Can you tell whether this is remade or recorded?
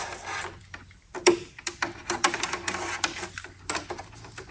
recorded